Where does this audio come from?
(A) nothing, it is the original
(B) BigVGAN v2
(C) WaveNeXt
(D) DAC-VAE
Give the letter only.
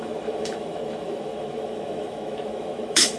D